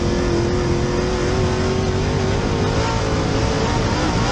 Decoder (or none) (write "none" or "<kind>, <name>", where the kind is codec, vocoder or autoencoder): none